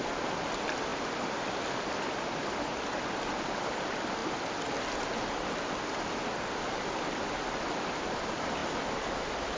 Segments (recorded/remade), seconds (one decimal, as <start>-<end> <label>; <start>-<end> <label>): 0.0-9.6 recorded